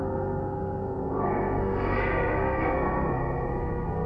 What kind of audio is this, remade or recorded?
remade